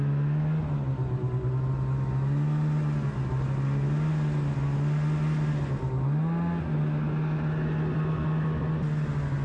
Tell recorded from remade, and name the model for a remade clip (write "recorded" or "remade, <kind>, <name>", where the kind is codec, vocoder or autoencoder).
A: recorded